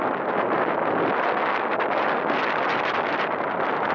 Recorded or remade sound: recorded